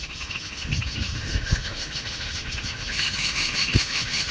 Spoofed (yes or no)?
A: yes